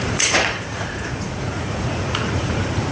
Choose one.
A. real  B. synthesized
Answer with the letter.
B